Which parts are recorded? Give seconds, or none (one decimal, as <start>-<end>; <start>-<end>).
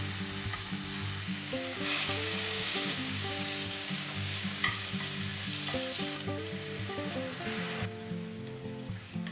0.0-1.3; 4.6-9.3